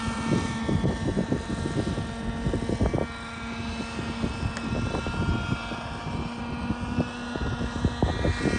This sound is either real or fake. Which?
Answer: real